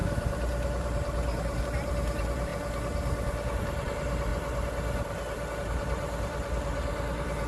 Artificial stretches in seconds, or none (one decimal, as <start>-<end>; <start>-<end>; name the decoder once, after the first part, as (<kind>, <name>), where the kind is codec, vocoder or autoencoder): 0.0-2.5 (vocoder, BigVGAN v2); 3.6-4.3; 5.6-7.5